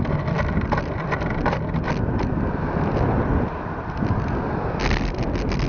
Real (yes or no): yes